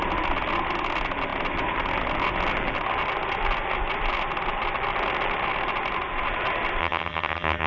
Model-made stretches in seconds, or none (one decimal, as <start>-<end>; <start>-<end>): 6.8-7.7